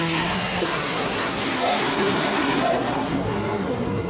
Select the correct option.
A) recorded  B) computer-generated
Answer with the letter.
B